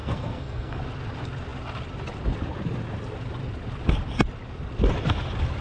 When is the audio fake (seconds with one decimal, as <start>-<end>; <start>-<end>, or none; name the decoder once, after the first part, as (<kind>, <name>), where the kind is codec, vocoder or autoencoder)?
0.0-0.8 (codec, SNAC)